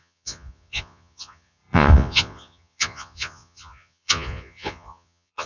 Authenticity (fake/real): fake